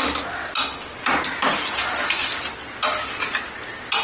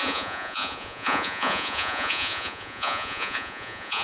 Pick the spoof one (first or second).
second